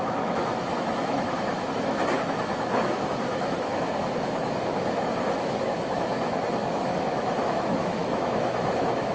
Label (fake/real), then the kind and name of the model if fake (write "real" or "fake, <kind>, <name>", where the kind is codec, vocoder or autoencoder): fake, autoencoder, DAC-VAE